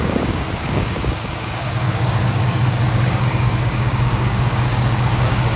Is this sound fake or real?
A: fake